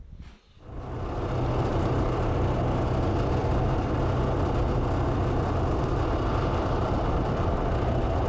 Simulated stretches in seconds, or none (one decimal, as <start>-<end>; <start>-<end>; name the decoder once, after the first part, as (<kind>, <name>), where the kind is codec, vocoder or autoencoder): 1.7-2.6 (vocoder, BigVGAN v2); 3.4-4.0; 6.4-7.5